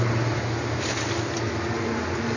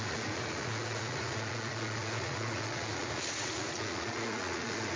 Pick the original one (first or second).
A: first